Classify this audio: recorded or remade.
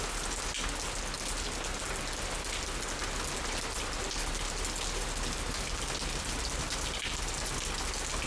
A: recorded